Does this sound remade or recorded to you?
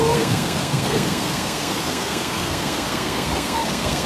remade